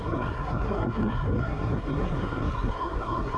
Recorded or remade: remade